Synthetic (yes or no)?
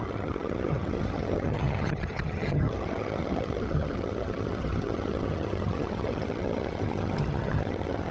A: yes